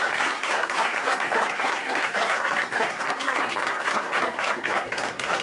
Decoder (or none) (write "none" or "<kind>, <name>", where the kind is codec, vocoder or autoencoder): codec, SNAC